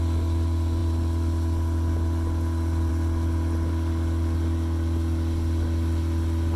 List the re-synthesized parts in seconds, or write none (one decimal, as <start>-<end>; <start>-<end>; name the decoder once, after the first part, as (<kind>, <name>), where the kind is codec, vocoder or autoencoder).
none